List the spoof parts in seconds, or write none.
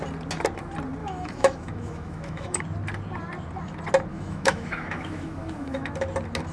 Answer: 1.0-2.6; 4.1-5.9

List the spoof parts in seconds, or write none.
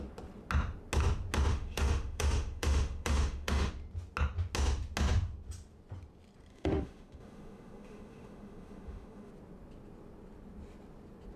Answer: 1.5-3.7; 6.5-9.3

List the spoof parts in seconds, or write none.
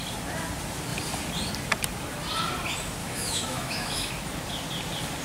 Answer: 3.0-4.1